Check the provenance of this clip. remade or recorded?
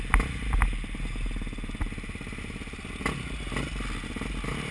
recorded